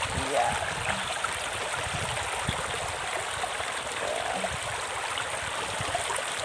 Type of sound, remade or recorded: recorded